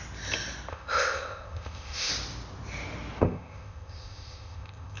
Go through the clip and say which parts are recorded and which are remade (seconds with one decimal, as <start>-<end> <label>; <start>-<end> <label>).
0.0-0.7 recorded; 0.7-2.1 remade; 2.1-3.2 recorded; 3.2-5.0 remade